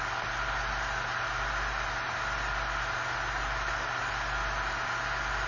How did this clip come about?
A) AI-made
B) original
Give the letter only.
B